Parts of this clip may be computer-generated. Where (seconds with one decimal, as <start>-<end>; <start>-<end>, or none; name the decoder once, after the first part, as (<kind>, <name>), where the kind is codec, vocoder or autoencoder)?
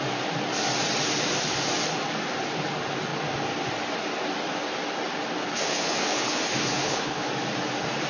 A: 5.4-7.3 (codec, HILCodec)